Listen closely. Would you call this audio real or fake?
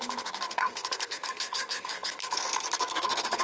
fake